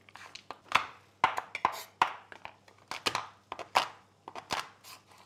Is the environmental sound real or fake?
real